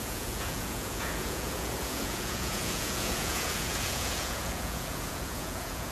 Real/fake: fake